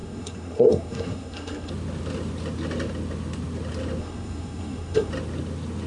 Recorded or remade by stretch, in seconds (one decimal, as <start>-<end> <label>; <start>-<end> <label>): 0.0-1.7 remade; 1.7-4.0 recorded; 4.0-5.1 remade; 5.1-5.9 recorded